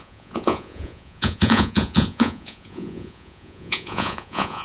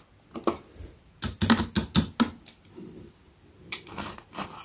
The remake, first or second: first